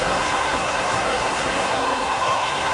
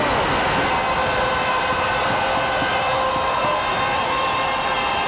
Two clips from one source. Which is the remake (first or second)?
first